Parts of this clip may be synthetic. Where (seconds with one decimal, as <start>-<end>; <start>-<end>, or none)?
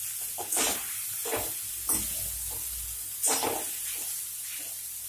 none